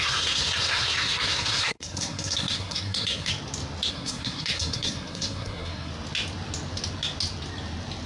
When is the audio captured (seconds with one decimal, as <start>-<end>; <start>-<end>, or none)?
3.3-3.9; 5.9-8.1